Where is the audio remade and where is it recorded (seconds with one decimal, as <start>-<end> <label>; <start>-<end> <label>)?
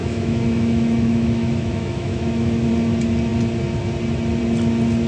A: 0.0-2.7 remade; 2.7-5.1 recorded